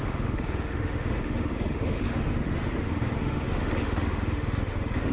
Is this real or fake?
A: fake